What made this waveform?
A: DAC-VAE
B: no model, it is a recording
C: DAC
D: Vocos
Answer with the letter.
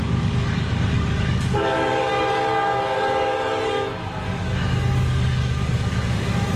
C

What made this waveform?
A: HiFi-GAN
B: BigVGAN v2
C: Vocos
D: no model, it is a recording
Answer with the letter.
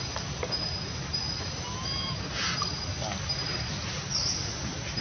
D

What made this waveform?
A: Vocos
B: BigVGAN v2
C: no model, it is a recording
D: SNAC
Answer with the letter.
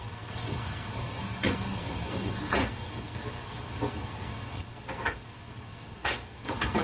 D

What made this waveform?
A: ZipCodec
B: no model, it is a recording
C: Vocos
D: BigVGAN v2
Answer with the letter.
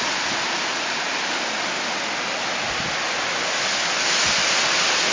B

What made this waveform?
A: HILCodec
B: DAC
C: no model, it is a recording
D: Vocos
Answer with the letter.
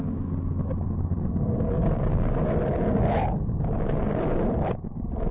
C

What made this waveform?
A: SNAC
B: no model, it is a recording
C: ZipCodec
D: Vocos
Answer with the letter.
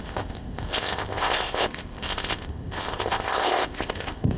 C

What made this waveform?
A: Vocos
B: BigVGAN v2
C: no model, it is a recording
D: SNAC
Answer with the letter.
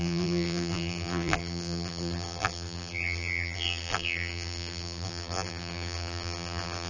B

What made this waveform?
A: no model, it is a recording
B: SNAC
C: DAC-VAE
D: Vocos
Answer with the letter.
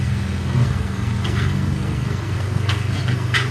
B